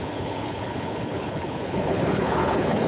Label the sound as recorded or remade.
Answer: remade